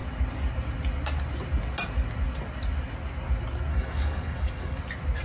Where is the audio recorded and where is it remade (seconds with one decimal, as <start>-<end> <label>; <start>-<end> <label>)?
0.0-3.7 recorded; 3.7-4.8 remade; 4.8-5.2 recorded